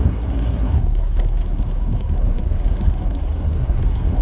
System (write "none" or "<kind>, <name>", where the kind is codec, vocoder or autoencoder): codec, SNAC